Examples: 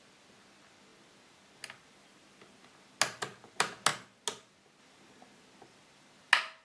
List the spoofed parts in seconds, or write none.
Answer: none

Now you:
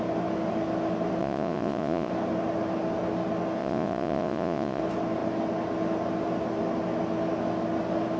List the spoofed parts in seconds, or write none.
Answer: 1.2-2.1 (vocoder, Vocos); 3.6-4.8

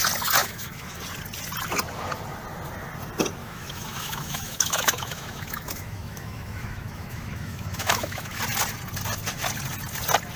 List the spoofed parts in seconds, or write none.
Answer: 0.4-1.0 (autoencoder, DAC-VAE); 3.4-8.4